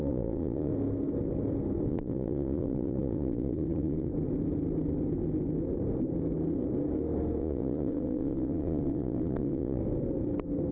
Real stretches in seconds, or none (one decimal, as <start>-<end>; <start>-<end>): 0.7-1.9; 4.1-7.4; 9.8-10.7